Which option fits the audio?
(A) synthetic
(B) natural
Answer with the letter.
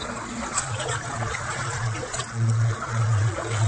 A